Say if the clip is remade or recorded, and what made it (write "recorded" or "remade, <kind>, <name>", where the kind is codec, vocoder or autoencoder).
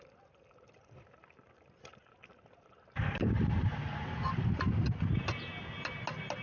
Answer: recorded